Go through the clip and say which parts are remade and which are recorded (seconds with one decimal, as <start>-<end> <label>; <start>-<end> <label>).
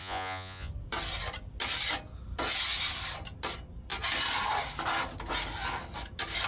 0.0-0.7 remade; 0.7-6.5 recorded